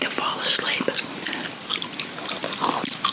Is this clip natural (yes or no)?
no